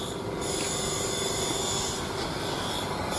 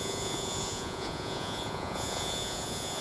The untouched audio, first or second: first